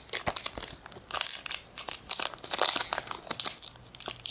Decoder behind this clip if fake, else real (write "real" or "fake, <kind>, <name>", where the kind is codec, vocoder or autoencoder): real